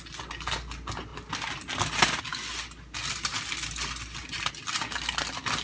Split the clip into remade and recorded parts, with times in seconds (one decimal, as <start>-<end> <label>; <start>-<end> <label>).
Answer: 0.0-5.6 recorded